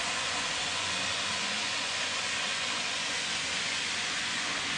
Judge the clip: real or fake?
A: fake